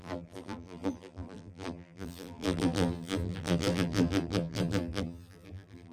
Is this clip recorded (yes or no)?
no